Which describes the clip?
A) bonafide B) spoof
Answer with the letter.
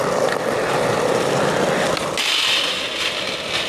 B